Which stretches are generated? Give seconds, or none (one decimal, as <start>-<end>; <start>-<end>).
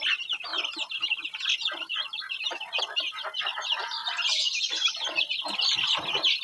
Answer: none